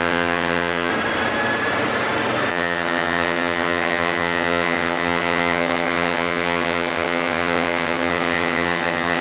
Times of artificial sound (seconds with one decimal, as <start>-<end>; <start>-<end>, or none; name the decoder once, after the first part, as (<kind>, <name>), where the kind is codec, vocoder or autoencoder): 0.0-0.9 (vocoder, HiFi-GAN); 2.5-9.2